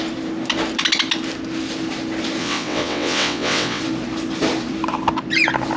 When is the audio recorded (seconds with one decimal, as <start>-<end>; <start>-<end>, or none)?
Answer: 0.0-2.4; 3.8-5.8